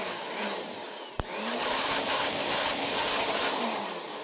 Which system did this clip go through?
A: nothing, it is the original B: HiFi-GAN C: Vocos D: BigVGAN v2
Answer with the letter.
A